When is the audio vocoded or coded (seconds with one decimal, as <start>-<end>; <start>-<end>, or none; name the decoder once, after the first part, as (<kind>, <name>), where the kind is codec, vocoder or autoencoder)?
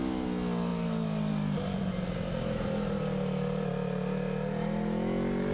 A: none